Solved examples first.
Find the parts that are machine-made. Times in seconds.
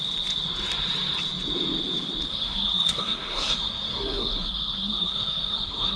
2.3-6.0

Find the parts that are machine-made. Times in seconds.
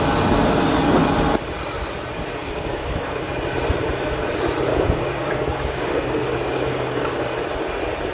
2.4-3.3; 4.7-7.2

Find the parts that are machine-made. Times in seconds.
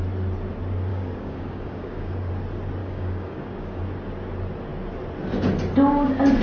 0.9-2.3; 2.8-3.8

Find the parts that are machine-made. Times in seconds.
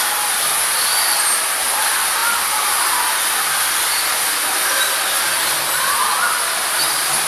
none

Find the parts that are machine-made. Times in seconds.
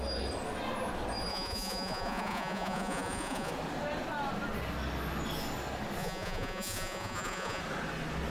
1.3-3.5; 6.0-7.6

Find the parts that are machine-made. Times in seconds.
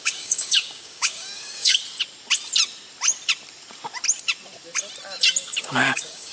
0.0-1.8; 5.6-6.3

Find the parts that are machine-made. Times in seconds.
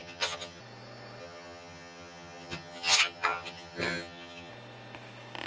0.0-0.6; 1.2-4.5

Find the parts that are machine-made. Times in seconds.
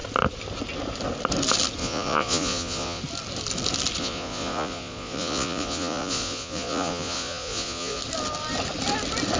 1.8-3.0; 4.0-8.0